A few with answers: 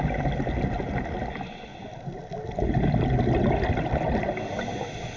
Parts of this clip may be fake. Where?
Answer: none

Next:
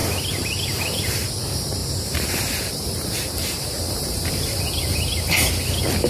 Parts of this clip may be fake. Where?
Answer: 0.0-1.3 (vocoder, BigVGAN v2); 1.8-5.5